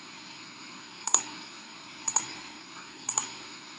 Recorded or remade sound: remade